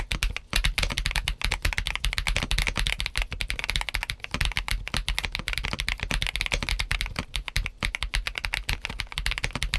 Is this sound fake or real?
real